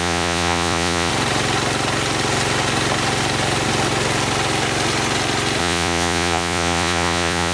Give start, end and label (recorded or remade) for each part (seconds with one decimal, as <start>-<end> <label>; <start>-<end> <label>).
0.0-1.1 remade; 1.1-5.6 recorded; 5.6-7.5 remade